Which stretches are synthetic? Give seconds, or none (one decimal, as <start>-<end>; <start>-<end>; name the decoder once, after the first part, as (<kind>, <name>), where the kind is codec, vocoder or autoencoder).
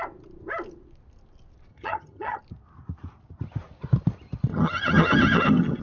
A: 1.7-2.4 (vocoder, HiFi-GAN); 4.5-5.8